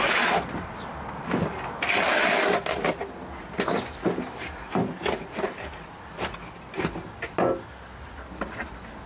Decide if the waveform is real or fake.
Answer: real